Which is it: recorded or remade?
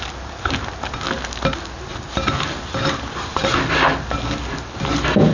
recorded